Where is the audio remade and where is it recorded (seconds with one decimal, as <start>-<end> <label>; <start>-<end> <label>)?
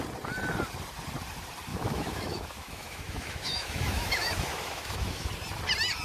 0.0-1.7 recorded; 1.7-5.3 remade; 5.3-6.0 recorded